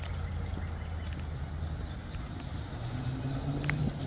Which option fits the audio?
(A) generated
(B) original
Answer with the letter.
B